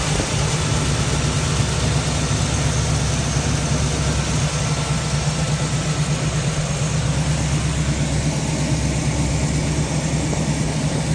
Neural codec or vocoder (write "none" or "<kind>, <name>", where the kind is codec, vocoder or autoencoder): none